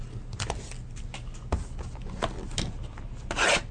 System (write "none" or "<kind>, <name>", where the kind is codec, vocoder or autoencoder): none